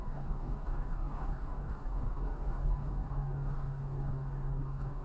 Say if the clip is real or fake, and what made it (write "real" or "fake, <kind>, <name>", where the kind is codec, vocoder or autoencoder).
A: fake, codec, DAC